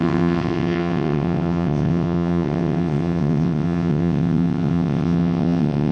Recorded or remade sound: remade